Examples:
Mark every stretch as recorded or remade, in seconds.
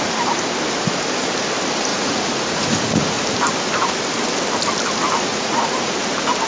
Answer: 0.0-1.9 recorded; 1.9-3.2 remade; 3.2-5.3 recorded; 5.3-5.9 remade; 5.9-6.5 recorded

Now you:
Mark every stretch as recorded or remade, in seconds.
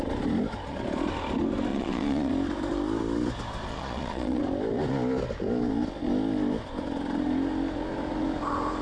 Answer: 0.0-1.7 recorded; 1.7-2.3 remade; 2.3-3.7 recorded; 3.7-4.4 remade; 4.4-8.8 recorded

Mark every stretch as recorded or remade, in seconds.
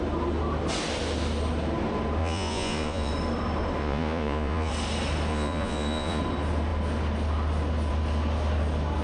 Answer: 0.0-2.2 recorded; 2.2-3.1 remade; 3.1-3.8 recorded; 3.8-4.7 remade; 4.7-5.3 recorded; 5.3-6.2 remade; 6.2-9.0 recorded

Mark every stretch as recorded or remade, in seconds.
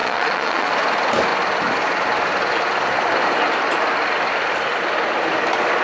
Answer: 0.0-0.7 remade; 0.7-5.8 recorded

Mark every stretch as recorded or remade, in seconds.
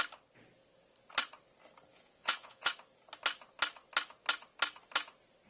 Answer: 0.0-1.9 recorded; 1.9-2.7 remade; 2.7-5.5 recorded